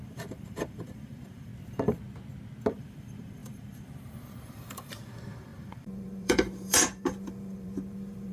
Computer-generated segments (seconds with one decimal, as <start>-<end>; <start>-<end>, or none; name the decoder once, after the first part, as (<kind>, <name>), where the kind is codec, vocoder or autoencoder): 0.0-1.5 (vocoder, BigVGAN v2); 2.7-8.3